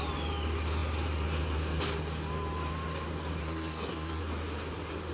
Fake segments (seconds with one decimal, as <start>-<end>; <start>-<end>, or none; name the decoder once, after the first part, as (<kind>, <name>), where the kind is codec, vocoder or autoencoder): 3.4-4.2 (codec, SNAC)